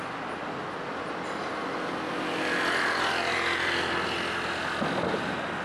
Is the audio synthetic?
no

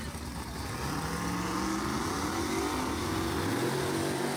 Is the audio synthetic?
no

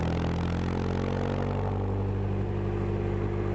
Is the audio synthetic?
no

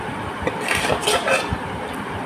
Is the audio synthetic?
yes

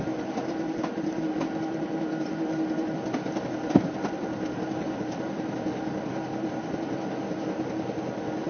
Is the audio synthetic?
yes